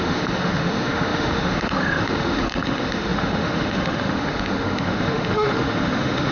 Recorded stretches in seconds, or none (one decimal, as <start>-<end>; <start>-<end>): none